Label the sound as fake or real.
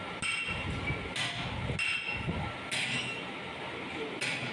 real